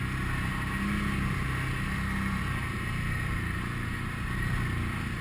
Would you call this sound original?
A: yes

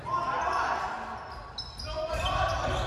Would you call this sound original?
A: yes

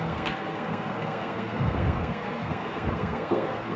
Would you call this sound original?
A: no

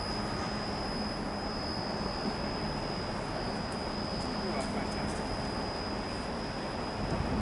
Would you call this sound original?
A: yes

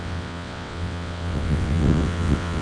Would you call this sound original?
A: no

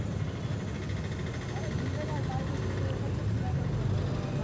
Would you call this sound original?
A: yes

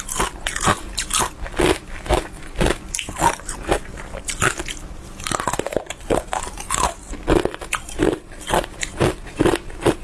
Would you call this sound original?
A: yes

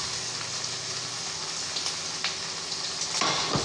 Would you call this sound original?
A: yes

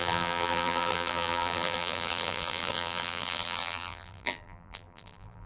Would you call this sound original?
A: no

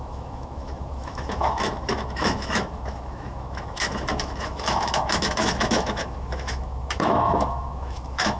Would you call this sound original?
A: no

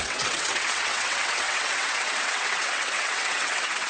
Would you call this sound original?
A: no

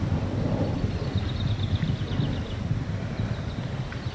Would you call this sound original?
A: yes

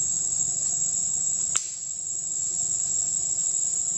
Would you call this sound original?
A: yes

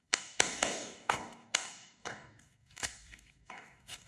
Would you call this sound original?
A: no